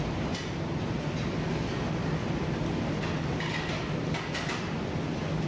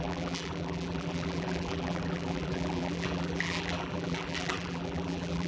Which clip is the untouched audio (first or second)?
first